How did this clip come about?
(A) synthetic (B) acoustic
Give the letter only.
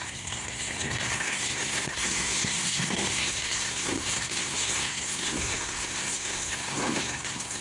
A